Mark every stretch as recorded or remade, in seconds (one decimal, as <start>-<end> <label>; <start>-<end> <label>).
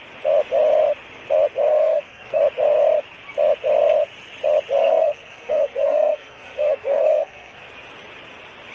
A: 0.0-1.7 recorded; 1.7-2.4 remade; 2.4-4.8 recorded; 4.8-7.7 remade; 7.7-8.7 recorded